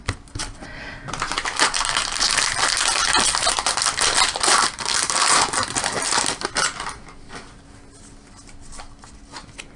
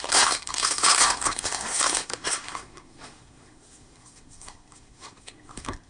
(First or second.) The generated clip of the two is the second